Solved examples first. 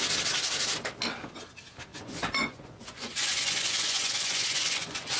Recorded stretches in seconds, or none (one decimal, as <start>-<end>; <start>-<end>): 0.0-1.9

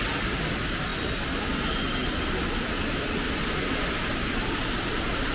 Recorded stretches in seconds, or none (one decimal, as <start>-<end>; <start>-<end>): 0.0-5.3

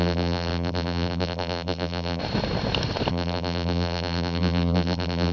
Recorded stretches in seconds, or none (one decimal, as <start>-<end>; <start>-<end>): 2.2-3.1